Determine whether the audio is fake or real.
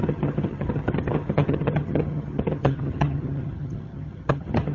fake